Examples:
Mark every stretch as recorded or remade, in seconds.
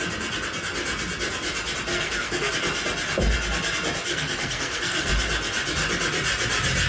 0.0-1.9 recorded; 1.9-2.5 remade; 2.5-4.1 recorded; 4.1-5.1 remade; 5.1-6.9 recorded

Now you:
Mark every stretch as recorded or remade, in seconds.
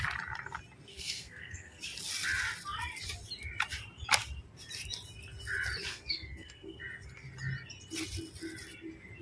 0.0-0.9 recorded; 0.9-1.8 remade; 1.8-5.9 recorded; 5.9-6.8 remade; 6.8-9.2 recorded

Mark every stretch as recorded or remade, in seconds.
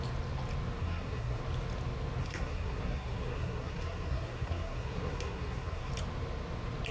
0.0-0.8 recorded; 0.8-1.4 remade; 1.4-2.2 recorded; 2.2-5.9 remade; 5.9-6.9 recorded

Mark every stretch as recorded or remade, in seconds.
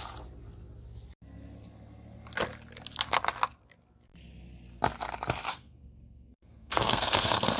0.0-5.5 recorded; 5.5-7.6 remade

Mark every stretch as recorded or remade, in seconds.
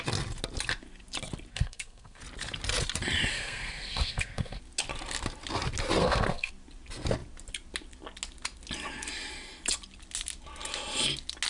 0.0-1.5 recorded; 1.5-2.2 remade; 2.2-3.3 recorded; 3.3-4.6 remade; 4.6-6.0 recorded; 6.0-6.5 remade; 6.5-11.5 recorded